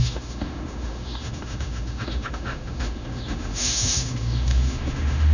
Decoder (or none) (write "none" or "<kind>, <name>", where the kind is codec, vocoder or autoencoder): autoencoder, DAC-VAE